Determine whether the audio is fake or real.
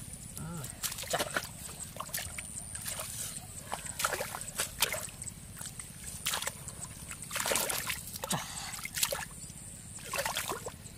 real